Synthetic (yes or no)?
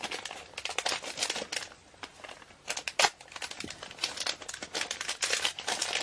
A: no